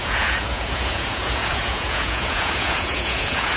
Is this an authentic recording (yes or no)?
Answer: no